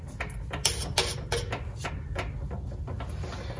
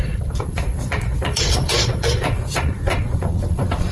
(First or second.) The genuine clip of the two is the first